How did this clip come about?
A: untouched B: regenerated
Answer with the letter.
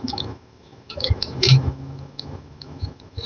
B